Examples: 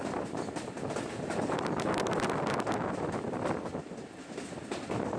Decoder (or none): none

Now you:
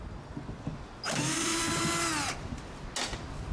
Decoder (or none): none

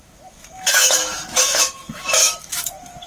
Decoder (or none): autoencoder, DAC-VAE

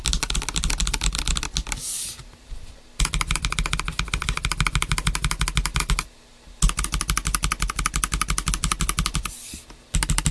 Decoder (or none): none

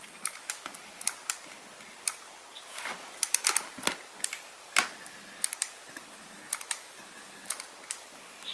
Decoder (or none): none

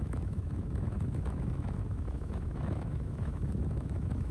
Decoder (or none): autoencoder, DAC-VAE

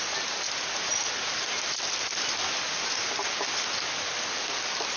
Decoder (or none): none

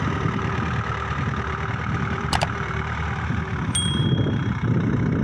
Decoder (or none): vocoder, BigVGAN v2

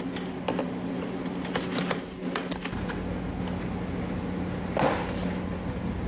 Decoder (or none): none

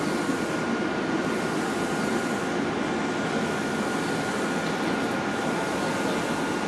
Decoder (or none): none